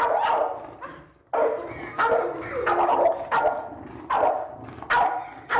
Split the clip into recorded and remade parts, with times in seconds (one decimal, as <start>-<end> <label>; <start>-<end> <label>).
0.0-1.3 remade; 1.3-3.7 recorded; 3.7-5.6 remade